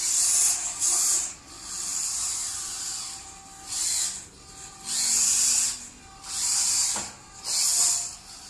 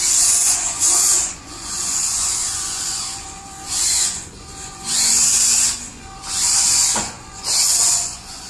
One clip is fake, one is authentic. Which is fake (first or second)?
second